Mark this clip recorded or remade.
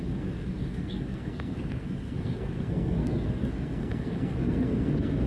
remade